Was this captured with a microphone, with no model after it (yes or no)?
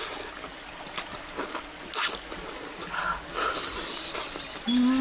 yes